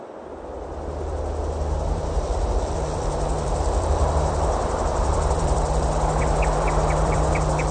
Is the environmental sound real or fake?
fake